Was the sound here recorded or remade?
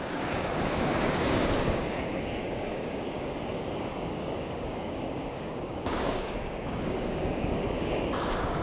remade